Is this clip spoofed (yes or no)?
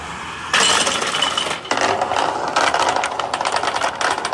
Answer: no